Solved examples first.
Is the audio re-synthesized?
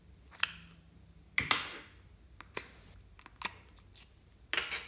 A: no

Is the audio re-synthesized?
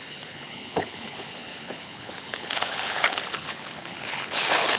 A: yes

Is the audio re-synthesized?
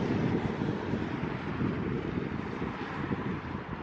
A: no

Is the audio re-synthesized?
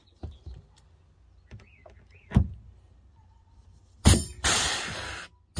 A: no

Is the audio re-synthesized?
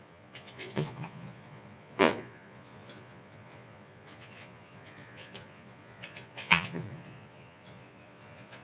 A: yes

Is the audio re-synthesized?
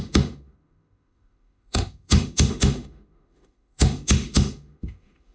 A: yes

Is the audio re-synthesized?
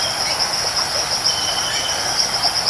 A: no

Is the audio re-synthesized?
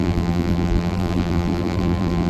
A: yes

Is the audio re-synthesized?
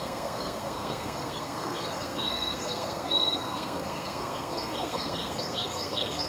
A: yes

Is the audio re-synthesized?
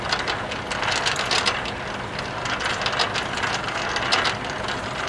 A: no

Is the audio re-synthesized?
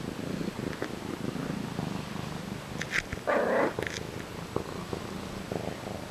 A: no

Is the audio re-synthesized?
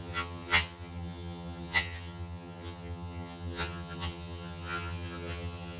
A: yes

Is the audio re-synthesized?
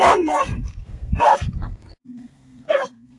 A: yes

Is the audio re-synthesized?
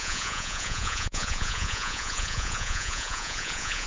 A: yes